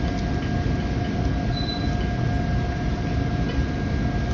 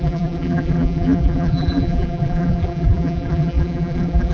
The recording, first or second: first